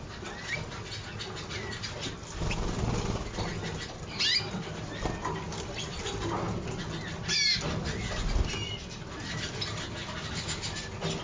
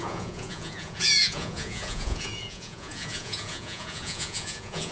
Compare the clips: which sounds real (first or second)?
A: first